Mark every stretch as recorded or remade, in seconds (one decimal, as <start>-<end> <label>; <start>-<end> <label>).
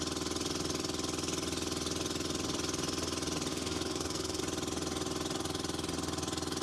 0.0-3.5 recorded; 3.5-4.4 remade; 4.4-6.6 recorded